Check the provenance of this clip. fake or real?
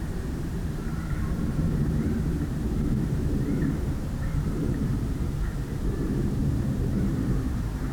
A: fake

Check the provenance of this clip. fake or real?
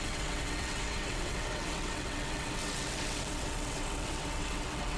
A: fake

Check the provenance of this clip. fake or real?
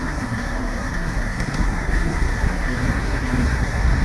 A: fake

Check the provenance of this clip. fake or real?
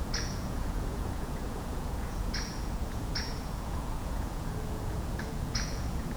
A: fake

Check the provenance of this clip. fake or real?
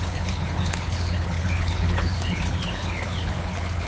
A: fake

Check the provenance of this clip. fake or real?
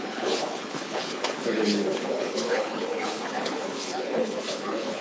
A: fake